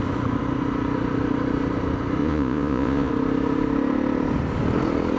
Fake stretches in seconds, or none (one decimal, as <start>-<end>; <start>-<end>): 2.2-3.1